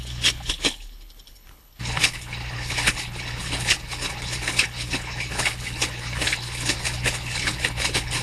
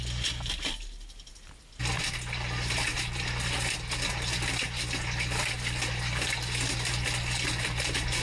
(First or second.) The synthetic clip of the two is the first